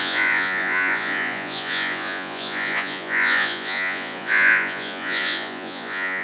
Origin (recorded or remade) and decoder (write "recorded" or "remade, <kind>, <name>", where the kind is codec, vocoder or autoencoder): remade, vocoder, Vocos